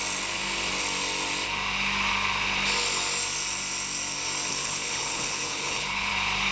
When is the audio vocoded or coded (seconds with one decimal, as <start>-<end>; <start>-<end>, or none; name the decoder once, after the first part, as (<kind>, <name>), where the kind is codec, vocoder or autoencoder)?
4.5-6.1 (codec, HILCodec)